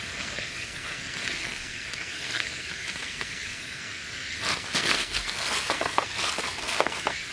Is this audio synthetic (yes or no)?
yes